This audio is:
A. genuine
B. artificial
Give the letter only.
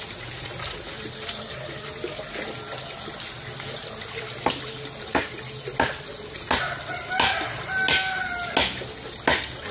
A